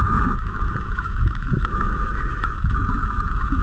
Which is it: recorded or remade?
remade